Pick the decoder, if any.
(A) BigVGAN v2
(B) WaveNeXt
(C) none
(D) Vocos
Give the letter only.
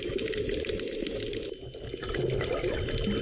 C